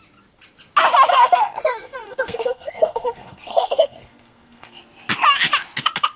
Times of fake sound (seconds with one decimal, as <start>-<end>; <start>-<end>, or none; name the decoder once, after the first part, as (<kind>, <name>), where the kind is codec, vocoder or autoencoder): 1.1-4.8 (codec, SNAC)